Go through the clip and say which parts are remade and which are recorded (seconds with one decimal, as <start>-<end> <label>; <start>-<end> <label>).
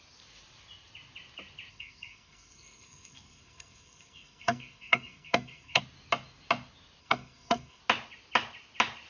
0.0-1.7 recorded; 1.7-5.8 remade; 5.8-7.0 recorded; 7.0-7.8 remade; 7.8-9.1 recorded